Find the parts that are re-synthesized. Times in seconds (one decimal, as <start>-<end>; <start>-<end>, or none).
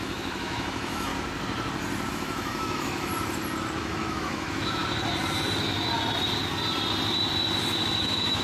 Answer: 0.0-1.1; 2.1-3.1; 3.8-4.8; 8.0-8.4